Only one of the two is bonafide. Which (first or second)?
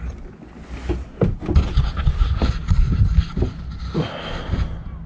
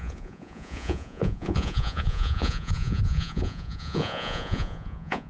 first